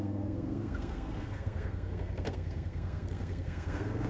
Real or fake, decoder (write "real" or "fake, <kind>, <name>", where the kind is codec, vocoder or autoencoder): fake, codec, SNAC